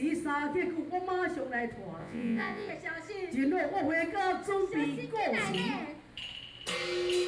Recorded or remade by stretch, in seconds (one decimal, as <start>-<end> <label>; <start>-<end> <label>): 0.0-2.0 recorded; 2.0-2.7 remade; 2.7-7.3 recorded